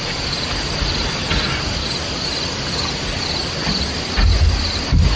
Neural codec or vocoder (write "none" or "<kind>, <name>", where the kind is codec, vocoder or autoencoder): none